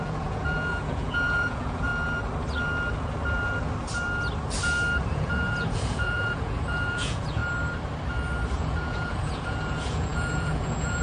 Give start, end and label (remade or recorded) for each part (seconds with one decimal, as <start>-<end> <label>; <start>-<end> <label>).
0.0-1.9 remade; 1.9-5.1 recorded; 5.1-7.4 remade; 7.4-8.6 recorded; 8.6-11.0 remade